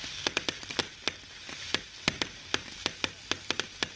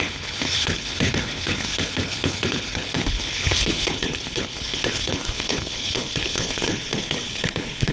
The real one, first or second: first